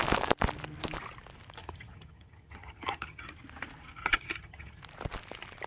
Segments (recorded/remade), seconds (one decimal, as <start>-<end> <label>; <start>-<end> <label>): 0.0-1.6 recorded; 1.6-3.3 remade; 3.3-4.0 recorded; 4.0-4.8 remade; 4.8-5.7 recorded